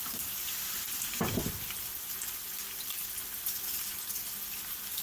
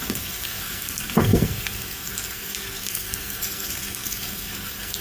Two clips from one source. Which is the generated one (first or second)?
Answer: second